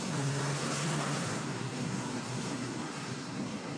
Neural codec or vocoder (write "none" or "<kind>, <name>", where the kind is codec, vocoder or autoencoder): codec, SNAC